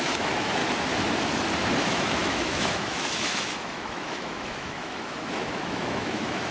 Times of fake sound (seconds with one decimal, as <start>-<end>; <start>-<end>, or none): 0.0-0.6; 1.8-6.5